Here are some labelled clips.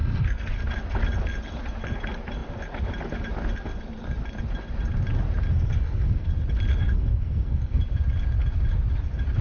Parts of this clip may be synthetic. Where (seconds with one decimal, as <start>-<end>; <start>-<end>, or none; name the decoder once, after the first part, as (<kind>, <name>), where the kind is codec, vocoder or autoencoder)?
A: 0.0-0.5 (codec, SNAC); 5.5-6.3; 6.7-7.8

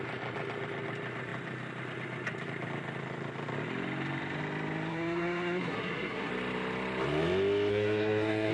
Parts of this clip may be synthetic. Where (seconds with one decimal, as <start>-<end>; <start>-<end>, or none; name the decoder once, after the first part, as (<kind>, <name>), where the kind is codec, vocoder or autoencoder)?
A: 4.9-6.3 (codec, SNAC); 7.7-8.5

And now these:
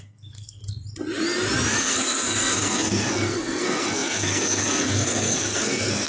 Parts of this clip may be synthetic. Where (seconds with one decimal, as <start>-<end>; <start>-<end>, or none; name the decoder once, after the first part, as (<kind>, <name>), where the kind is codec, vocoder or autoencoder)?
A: 0.0-0.6 (codec, SNAC); 1.8-6.1

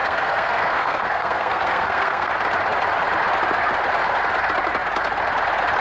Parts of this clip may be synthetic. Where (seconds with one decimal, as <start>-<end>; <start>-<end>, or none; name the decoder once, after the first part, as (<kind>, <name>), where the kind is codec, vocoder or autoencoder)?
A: 0.0-2.3 (codec, SNAC)